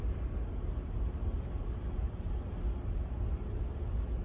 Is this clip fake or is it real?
real